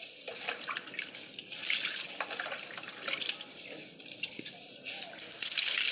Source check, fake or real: real